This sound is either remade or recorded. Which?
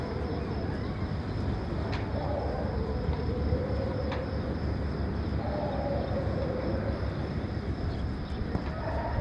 recorded